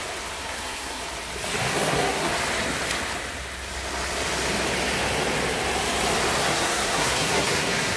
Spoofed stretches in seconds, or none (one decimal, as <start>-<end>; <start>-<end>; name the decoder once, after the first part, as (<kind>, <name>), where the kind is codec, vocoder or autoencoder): 0.4-1.0 (codec, SNAC); 1.7-2.3; 6.4-8.0